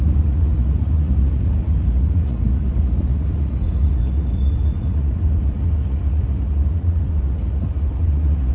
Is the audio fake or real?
fake